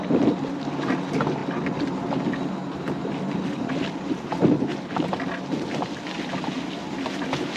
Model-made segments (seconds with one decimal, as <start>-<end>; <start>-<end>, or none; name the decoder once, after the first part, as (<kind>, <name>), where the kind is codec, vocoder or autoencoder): none